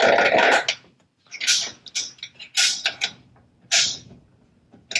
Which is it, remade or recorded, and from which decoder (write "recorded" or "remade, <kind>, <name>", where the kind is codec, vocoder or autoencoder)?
recorded